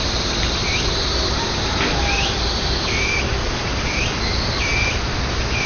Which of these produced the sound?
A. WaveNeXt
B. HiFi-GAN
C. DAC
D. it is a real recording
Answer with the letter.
D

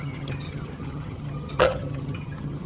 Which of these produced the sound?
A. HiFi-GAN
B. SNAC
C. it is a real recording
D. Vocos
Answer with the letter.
A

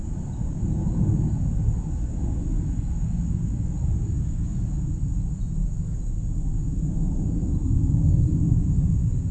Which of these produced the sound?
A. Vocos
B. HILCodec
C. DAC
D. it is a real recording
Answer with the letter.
D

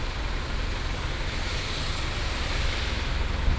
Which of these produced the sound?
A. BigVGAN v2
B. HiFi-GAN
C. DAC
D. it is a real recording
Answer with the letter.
A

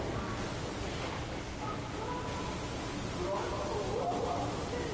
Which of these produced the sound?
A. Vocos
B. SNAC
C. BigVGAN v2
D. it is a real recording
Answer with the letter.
D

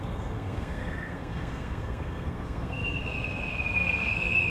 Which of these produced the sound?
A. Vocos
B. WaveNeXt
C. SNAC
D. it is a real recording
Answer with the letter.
C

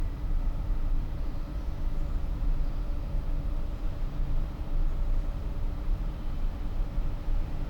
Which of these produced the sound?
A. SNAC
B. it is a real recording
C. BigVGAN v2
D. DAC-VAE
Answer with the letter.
C